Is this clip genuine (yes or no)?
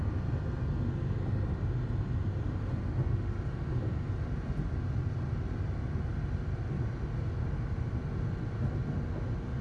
yes